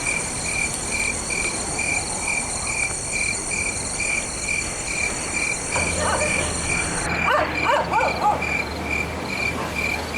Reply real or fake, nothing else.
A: real